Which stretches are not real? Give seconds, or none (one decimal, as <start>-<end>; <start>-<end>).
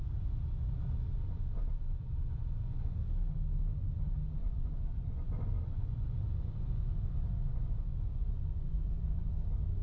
2.4-3.0; 4.4-9.3